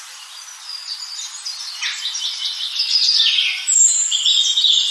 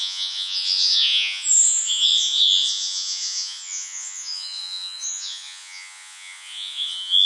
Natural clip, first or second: first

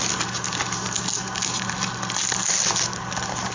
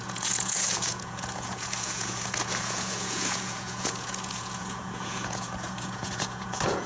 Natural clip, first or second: first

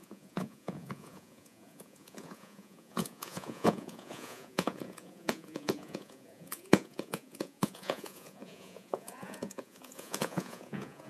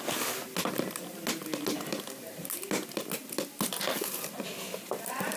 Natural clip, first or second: second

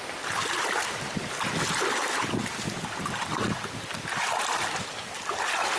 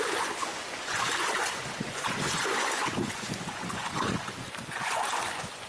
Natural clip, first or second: first